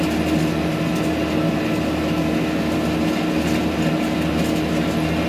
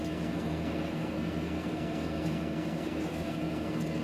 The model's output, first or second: second